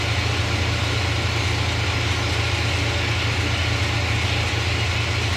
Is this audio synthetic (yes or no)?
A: no